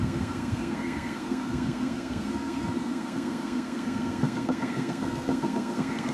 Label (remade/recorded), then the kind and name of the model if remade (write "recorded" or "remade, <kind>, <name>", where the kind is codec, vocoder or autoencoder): remade, codec, SNAC